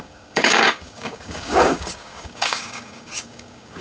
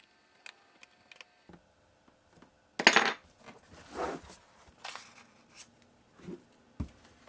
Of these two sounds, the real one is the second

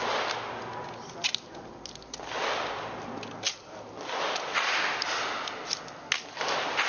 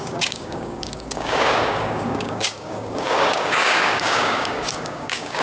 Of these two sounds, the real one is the first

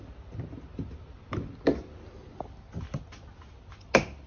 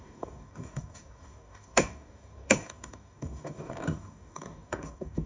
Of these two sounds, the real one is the first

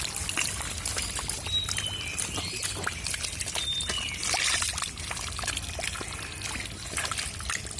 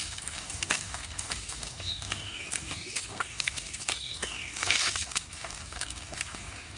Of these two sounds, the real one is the first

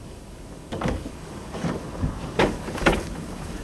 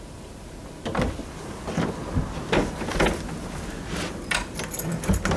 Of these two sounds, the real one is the second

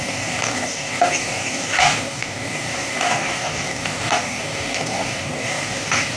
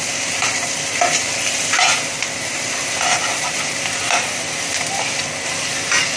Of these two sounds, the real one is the second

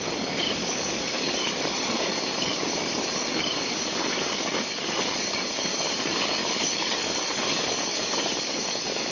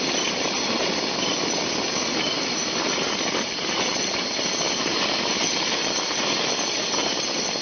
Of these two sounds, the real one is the second